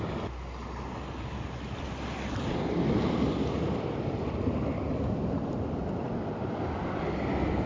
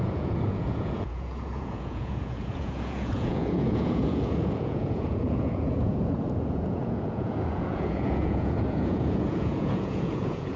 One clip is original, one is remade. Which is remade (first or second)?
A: second